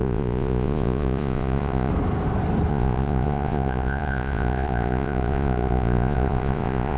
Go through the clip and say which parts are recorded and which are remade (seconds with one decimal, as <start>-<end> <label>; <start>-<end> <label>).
0.0-1.9 remade; 1.9-2.7 recorded; 2.7-7.0 remade